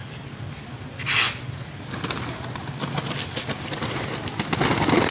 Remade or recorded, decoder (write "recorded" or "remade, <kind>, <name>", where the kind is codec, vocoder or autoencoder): recorded